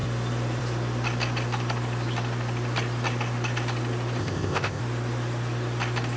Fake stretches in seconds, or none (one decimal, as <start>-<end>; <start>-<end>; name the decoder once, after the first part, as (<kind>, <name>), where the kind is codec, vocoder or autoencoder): 4.2-4.8 (codec, ZipCodec)